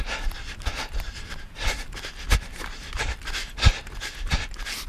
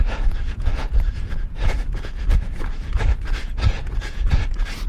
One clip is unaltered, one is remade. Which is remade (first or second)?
second